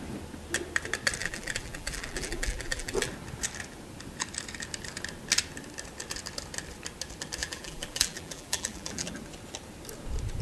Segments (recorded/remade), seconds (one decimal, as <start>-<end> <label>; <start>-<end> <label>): 0.0-1.2 recorded; 1.2-3.1 remade; 3.1-7.4 recorded; 7.4-9.1 remade; 9.1-10.4 recorded